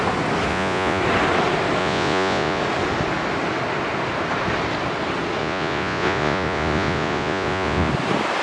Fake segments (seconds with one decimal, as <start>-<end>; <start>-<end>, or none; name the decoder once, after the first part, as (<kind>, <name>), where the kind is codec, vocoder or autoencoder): 0.5-1.0 (vocoder, Vocos); 1.8-2.6; 5.4-7.9